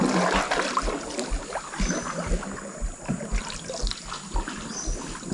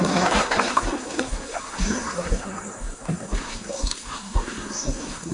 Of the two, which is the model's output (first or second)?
second